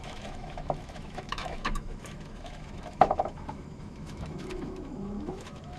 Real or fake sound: fake